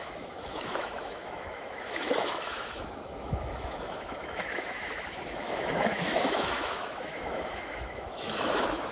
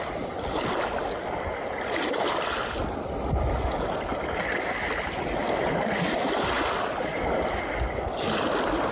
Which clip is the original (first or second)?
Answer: second